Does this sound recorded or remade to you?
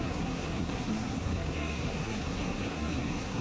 remade